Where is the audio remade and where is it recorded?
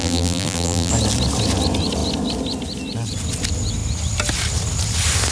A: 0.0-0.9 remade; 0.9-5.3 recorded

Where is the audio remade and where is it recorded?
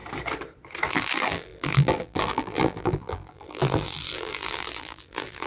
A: 0.0-0.9 recorded; 0.9-5.5 remade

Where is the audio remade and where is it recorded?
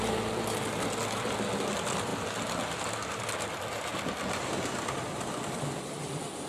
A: 0.0-6.5 recorded